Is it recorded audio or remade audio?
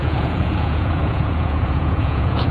remade